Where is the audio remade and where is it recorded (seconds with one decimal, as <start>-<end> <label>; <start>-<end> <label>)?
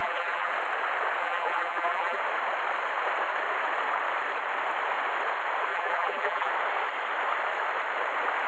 0.0-0.5 remade; 0.5-1.2 recorded; 1.2-2.2 remade; 2.2-5.7 recorded; 5.7-6.5 remade; 6.5-8.5 recorded